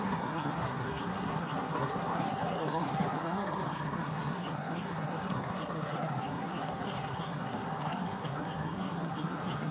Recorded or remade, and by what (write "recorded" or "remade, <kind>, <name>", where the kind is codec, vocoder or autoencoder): remade, codec, SNAC